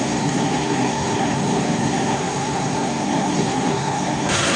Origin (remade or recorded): remade